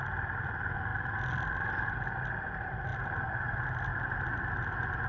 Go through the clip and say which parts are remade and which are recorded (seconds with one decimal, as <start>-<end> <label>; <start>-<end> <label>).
0.0-5.1 recorded